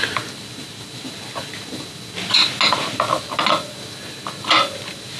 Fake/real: real